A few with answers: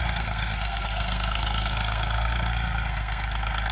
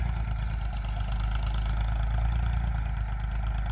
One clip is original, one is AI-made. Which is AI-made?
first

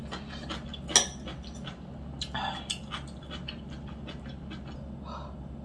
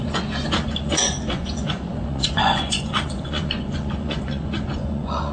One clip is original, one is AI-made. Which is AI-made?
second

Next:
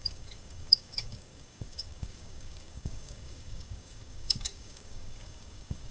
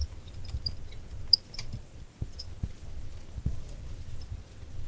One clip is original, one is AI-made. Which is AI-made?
first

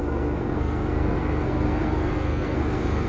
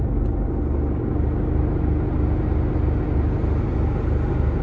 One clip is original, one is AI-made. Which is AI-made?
first